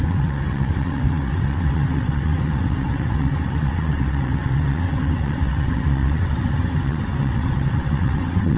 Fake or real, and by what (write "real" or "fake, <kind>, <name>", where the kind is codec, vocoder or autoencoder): fake, vocoder, WaveNeXt